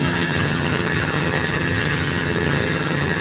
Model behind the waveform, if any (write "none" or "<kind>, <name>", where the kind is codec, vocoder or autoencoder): vocoder, HiFi-GAN